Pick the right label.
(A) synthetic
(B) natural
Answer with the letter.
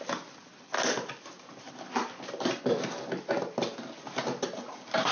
B